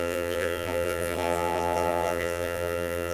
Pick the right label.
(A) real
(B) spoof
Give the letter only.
B